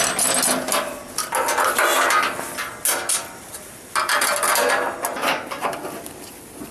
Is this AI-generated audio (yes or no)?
no